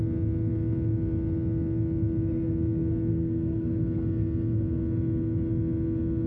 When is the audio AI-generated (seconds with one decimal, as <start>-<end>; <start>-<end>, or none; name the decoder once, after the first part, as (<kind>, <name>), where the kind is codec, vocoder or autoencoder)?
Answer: 3.1-3.8 (codec, SNAC)